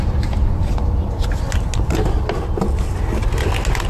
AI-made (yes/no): no